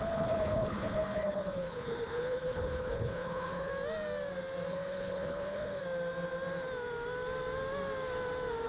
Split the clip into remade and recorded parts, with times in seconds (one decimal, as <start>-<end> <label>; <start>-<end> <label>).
0.0-3.7 remade; 3.7-4.7 recorded; 4.7-5.8 remade; 5.8-8.7 recorded

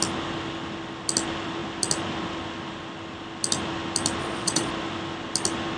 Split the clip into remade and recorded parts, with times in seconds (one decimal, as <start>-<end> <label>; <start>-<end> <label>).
0.0-4.2 recorded; 4.2-4.7 remade; 4.7-5.8 recorded

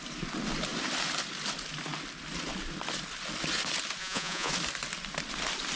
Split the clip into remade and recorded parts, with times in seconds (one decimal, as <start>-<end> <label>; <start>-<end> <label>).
0.0-4.0 recorded; 4.0-4.5 remade; 4.5-5.8 recorded

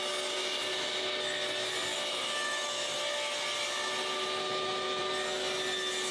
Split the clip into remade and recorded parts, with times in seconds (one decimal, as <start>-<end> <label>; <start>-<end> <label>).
0.0-1.9 recorded; 1.9-3.0 remade; 3.0-4.4 recorded; 4.4-5.0 remade; 5.0-6.1 recorded

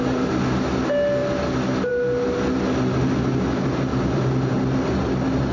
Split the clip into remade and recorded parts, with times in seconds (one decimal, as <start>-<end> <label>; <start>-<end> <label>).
0.0-5.5 recorded